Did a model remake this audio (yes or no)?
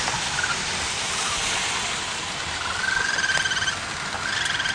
no